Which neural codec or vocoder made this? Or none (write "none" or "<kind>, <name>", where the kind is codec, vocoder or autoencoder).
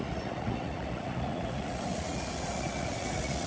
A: vocoder, Vocos